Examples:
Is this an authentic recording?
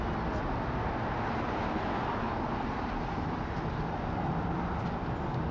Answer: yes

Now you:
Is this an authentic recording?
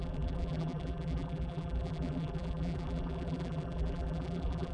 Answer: no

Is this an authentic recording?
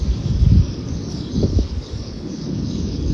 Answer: no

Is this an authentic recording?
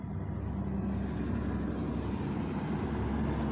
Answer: yes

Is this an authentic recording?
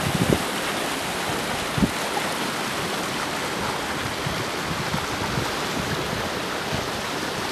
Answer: yes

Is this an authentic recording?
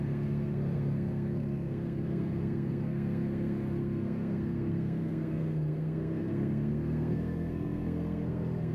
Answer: no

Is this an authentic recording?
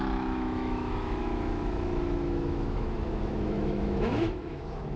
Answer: no